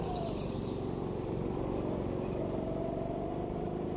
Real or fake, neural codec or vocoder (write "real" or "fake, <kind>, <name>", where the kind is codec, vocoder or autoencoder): real